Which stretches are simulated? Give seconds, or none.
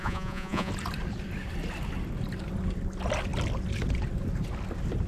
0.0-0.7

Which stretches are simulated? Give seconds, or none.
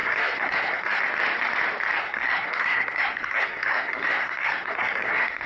0.0-1.0; 2.0-5.5